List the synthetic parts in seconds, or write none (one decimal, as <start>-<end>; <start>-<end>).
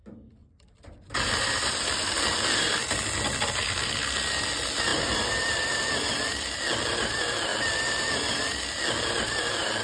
0.4-2.1; 4.9-5.8